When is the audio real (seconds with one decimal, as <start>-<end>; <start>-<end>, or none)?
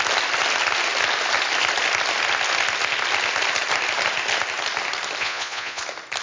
0.0-5.2; 5.8-6.2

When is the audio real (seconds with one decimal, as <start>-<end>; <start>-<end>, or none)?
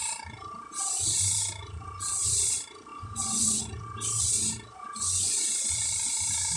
0.0-2.9; 3.6-4.7; 5.7-6.6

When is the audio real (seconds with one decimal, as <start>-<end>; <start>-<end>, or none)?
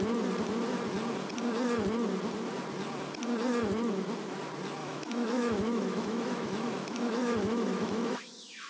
0.0-4.8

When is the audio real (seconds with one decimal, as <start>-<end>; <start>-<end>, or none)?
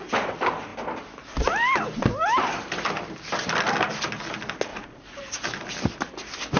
0.0-4.7; 5.2-6.6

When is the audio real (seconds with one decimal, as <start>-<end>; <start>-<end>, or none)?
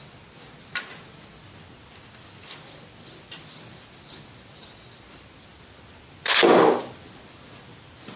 0.0-8.2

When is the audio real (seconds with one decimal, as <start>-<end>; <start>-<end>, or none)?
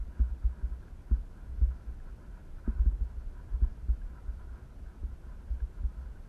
0.0-6.3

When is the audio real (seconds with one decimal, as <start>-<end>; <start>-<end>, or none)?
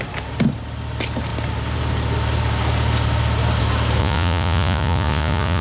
0.0-4.0